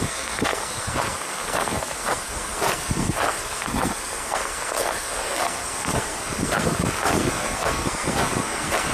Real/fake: fake